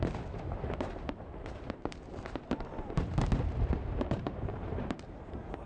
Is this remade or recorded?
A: remade